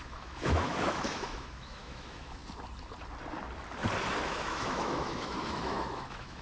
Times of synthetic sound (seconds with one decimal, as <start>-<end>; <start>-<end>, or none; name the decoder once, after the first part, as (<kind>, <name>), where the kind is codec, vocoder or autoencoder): 0.0-2.4 (autoencoder, DAC-VAE); 4.2-6.4